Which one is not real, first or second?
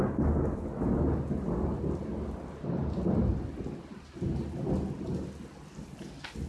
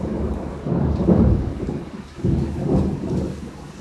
second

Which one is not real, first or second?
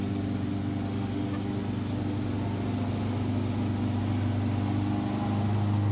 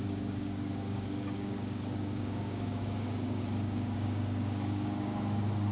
second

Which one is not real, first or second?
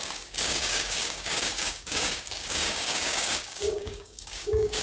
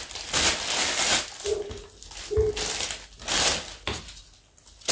first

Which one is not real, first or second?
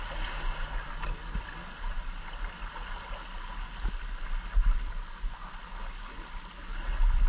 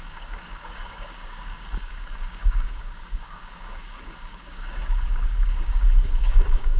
second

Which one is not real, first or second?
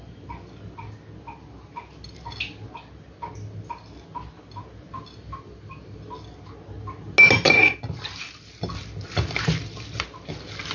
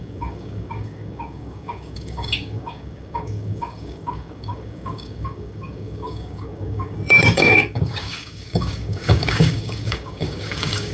second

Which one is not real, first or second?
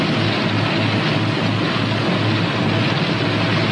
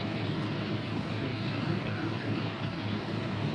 second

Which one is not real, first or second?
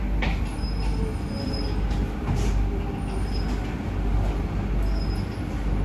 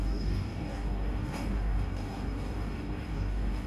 second